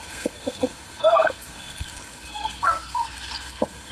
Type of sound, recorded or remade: remade